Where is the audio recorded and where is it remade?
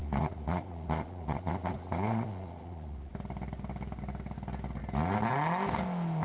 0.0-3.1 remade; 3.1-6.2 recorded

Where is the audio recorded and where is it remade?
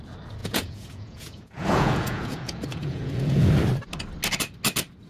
0.0-0.4 recorded; 0.4-3.5 remade; 3.5-5.1 recorded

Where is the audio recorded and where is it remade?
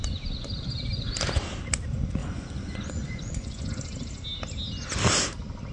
0.0-2.2 recorded; 2.2-3.7 remade; 3.7-5.7 recorded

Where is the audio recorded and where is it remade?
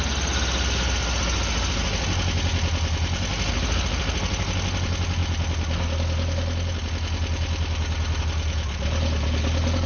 0.0-9.9 recorded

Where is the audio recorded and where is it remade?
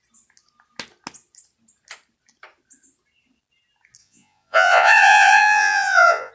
0.0-4.0 recorded; 4.0-6.3 remade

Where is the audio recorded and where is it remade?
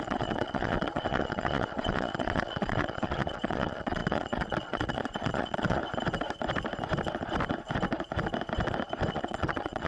0.0-5.8 remade; 5.8-9.1 recorded; 9.1-9.9 remade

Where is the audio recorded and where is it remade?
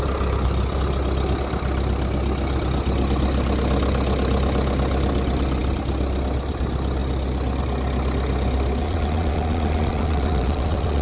0.0-8.8 recorded; 8.8-11.0 remade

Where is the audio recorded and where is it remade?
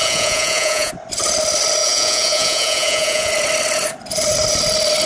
0.0-0.9 remade; 0.9-1.8 recorded; 1.8-3.3 remade; 3.3-5.1 recorded